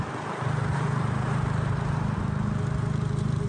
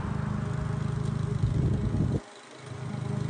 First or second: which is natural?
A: second